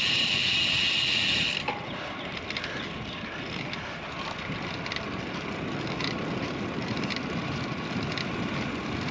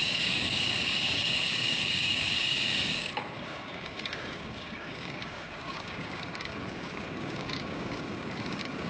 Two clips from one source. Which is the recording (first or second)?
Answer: first